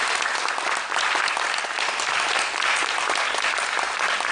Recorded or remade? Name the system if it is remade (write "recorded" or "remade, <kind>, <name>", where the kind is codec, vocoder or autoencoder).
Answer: recorded